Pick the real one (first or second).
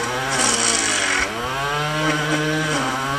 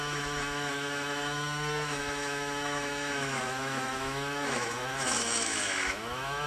first